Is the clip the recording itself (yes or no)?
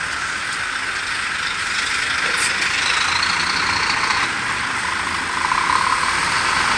yes